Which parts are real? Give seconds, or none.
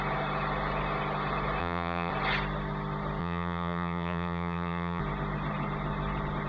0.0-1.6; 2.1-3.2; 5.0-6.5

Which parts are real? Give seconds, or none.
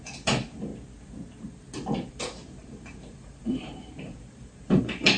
0.7-2.1